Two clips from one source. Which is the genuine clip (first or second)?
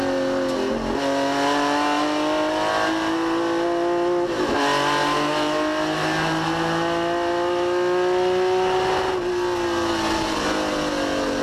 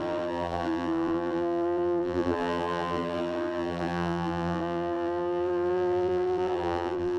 first